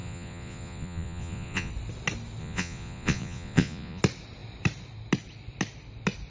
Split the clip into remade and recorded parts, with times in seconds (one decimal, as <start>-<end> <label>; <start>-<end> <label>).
0.0-1.7 remade; 1.7-2.4 recorded; 2.4-4.0 remade; 4.0-6.3 recorded